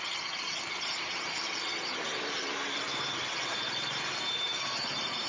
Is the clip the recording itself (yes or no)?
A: no